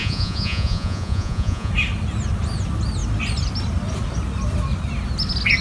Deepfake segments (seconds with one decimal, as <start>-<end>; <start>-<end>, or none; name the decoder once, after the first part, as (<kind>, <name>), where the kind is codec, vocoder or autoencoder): 0.0-1.7 (vocoder, Vocos)